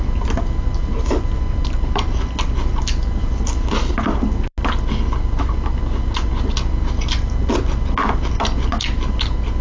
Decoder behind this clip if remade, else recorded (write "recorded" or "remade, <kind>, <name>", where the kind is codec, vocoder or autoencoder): recorded